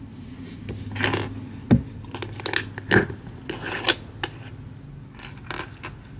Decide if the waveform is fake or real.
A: real